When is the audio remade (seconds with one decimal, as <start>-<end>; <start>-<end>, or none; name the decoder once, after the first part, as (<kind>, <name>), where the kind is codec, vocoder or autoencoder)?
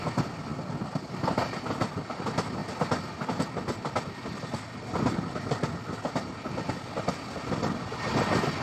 none